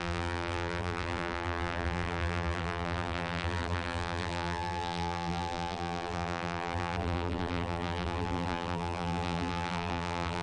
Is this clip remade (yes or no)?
yes